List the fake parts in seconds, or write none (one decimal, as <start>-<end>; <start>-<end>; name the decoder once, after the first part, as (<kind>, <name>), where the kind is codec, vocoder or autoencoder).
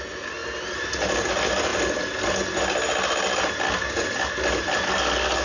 none